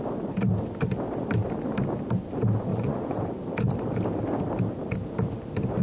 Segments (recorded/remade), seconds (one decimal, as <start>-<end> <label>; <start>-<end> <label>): 0.0-2.7 recorded; 2.7-3.3 remade; 3.3-5.8 recorded